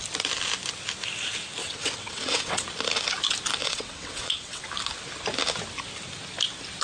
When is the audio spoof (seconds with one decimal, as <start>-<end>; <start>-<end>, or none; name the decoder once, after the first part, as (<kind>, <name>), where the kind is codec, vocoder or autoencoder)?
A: 1.6-2.7 (vocoder, WaveNeXt); 3.6-4.6